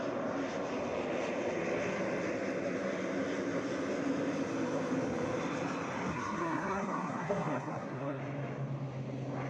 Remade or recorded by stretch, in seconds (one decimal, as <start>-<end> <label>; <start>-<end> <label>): 0.0-6.1 recorded; 6.1-8.2 remade; 8.2-9.5 recorded

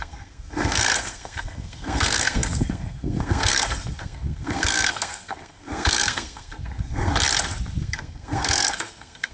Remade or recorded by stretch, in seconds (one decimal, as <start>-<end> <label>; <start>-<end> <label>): 0.0-7.1 remade; 7.1-7.8 recorded; 7.8-9.3 remade